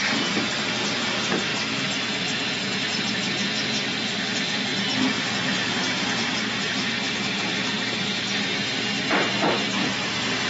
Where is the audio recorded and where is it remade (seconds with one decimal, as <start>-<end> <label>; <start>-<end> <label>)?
0.0-10.5 recorded